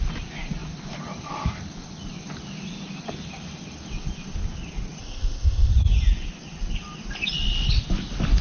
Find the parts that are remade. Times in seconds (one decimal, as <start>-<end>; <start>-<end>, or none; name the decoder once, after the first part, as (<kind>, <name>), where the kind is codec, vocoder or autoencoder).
5.0-5.7 (codec, ZipCodec)